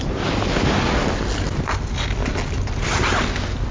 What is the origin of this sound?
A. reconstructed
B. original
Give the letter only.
B